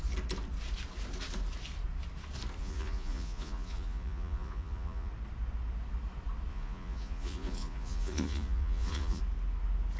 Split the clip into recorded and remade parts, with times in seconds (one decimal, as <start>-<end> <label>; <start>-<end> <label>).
0.0-2.6 recorded; 2.6-5.1 remade; 5.1-6.5 recorded; 6.5-9.2 remade; 9.2-10.0 recorded